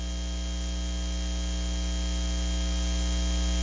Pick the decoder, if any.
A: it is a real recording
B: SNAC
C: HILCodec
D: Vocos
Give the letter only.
A